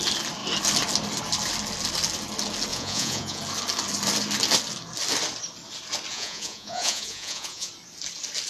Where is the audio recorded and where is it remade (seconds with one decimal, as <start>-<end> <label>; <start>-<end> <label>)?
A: 0.0-2.7 recorded; 2.7-3.4 remade; 3.4-6.1 recorded; 6.1-7.7 remade; 7.7-8.5 recorded